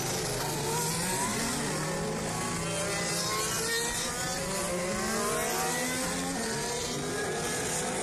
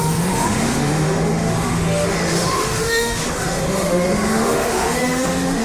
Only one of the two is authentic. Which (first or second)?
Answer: first